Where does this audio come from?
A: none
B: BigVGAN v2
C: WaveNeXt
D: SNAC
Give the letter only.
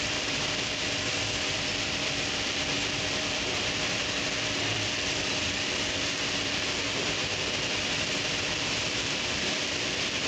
B